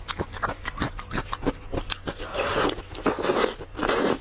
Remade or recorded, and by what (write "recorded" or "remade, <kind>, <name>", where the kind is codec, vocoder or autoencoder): recorded